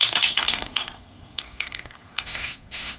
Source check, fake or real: fake